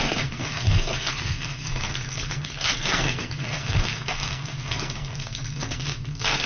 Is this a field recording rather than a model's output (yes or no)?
no